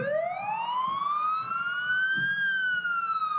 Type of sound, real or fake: real